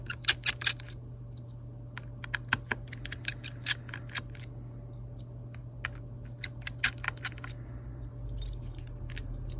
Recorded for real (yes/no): yes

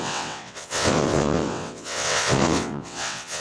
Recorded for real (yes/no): no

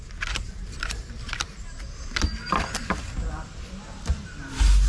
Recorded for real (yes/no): yes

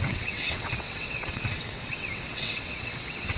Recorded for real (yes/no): no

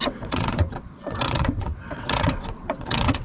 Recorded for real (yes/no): no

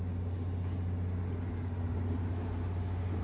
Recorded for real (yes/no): yes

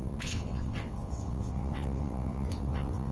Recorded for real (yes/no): no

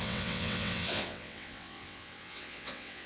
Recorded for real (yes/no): no